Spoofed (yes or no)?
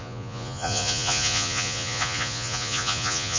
yes